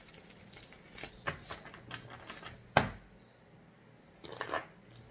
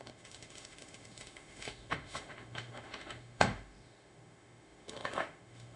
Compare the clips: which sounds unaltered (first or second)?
first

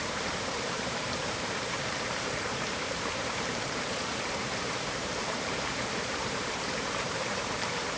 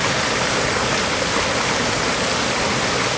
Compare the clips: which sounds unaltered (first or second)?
second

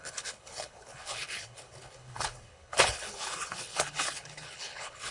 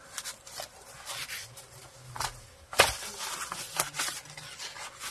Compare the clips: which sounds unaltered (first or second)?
second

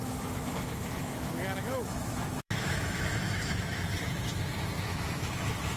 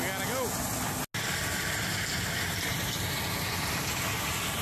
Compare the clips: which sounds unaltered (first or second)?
second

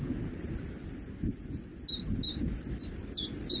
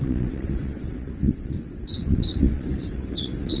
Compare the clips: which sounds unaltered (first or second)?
first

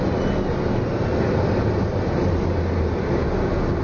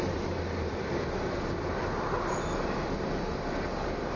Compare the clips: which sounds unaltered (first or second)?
first